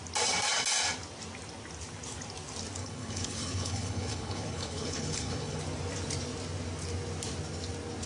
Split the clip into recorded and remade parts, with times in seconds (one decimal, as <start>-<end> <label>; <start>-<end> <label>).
0.0-2.8 recorded; 2.8-5.6 remade; 5.6-8.1 recorded